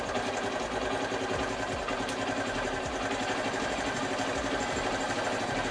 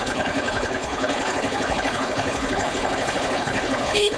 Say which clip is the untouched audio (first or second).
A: first